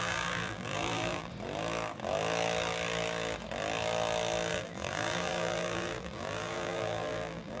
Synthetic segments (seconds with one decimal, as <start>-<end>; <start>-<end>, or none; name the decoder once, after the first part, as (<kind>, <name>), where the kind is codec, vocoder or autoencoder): 0.0-1.3 (vocoder, BigVGAN v2); 4.5-7.6